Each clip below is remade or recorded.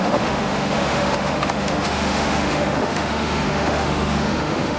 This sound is remade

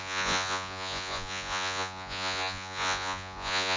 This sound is remade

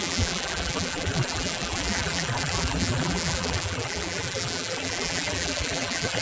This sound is remade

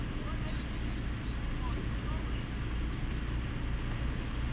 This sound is recorded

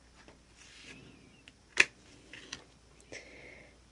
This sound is recorded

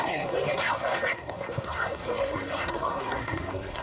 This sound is remade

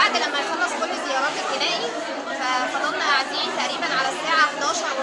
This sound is recorded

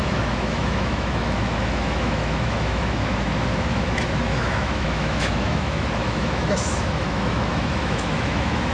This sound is remade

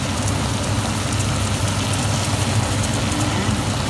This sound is recorded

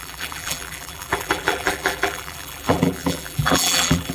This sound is remade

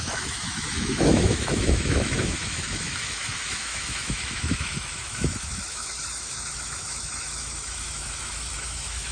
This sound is remade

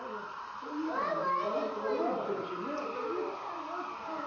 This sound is recorded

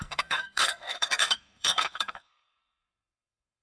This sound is remade